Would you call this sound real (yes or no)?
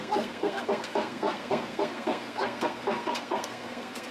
no